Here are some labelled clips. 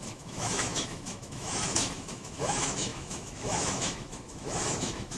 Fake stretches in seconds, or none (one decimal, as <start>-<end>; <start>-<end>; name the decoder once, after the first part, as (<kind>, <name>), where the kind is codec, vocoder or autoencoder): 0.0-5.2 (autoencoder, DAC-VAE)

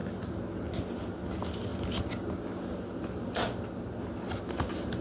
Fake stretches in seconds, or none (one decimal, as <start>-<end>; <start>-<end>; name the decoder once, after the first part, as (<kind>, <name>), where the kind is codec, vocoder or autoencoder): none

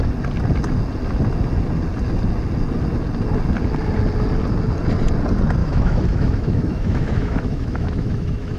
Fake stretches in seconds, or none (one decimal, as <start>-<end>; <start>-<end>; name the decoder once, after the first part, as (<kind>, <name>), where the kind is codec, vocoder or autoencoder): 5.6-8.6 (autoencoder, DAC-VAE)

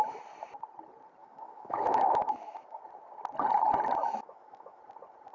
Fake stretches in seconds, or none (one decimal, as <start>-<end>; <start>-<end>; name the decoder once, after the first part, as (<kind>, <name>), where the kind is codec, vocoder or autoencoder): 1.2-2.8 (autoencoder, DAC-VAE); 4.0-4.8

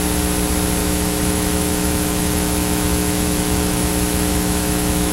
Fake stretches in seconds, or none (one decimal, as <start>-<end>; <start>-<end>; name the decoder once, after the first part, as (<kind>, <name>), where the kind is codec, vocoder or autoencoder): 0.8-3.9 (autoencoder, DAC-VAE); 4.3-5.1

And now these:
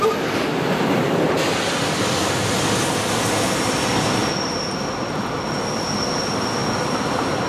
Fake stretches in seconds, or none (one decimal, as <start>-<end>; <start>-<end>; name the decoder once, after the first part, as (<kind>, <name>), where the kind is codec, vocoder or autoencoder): none

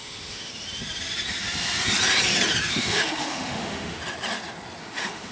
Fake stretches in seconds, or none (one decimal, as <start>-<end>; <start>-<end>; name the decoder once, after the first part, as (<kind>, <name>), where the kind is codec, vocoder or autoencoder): 0.0-0.5 (autoencoder, DAC-VAE); 2.7-4.0; 4.8-5.3

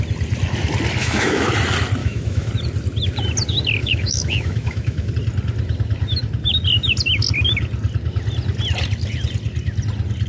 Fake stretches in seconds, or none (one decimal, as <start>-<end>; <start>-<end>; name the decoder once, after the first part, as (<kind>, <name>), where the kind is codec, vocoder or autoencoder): 1.0-1.5 (autoencoder, DAC-VAE); 2.0-2.5; 3.8-5.1